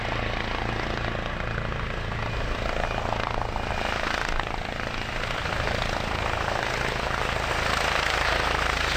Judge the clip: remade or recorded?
recorded